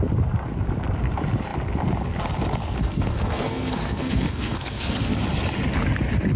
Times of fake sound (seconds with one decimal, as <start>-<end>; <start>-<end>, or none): 2.6-5.1